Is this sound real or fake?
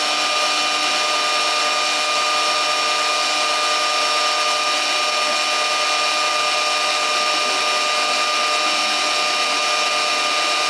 real